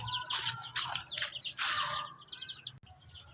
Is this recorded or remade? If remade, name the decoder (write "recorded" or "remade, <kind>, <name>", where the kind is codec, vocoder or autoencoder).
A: recorded